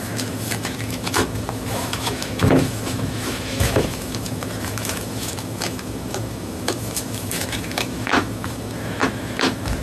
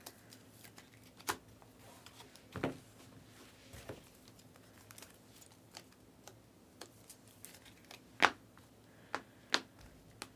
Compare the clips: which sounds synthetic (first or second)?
first